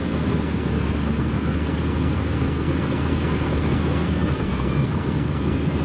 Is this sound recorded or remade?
remade